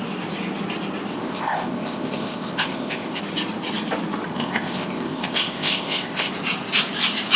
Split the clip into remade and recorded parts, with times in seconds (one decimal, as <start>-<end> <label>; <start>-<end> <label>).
0.0-1.1 recorded; 1.1-3.2 remade; 3.2-4.3 recorded; 4.3-6.3 remade; 6.3-7.4 recorded